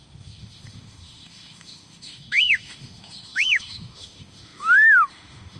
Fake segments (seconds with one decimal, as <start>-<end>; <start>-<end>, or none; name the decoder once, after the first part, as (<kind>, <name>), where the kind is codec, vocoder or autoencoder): 0.0-5.6 (autoencoder, DAC-VAE)